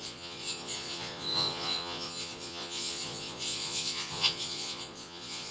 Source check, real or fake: fake